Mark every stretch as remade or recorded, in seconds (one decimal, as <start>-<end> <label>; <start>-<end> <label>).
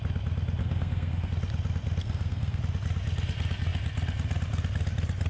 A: 0.0-0.6 recorded; 0.6-1.3 remade; 1.3-2.0 recorded; 2.0-2.6 remade; 2.6-5.3 recorded